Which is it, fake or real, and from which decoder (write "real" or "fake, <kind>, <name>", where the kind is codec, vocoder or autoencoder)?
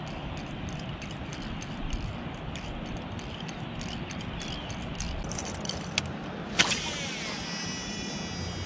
real